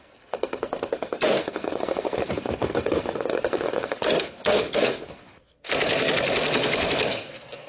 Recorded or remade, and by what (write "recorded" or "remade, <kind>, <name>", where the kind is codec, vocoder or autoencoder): remade, codec, SNAC